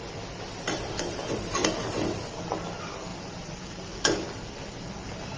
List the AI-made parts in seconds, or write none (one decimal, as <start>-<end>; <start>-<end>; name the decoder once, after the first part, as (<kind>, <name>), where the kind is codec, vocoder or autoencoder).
none